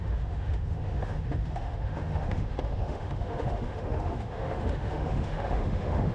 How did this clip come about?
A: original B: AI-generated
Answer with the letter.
B